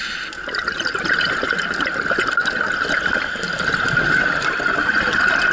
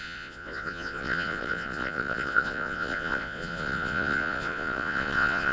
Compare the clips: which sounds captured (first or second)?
first